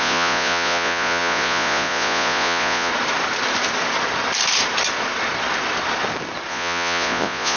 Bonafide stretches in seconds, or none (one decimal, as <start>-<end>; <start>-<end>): 2.9-6.5